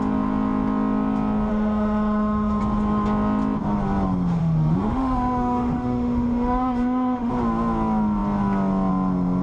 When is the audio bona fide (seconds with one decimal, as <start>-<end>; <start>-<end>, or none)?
0.0-1.5; 2.6-4.4; 7.3-9.4